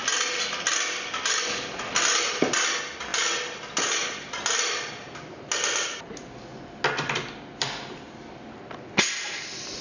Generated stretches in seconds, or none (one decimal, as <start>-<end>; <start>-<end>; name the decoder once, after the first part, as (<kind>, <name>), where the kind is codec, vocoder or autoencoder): none